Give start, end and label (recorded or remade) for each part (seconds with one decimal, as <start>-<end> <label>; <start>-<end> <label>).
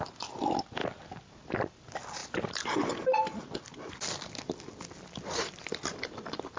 0.0-6.6 recorded